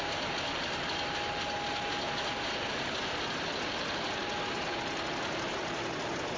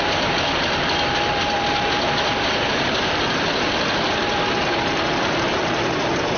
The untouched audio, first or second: first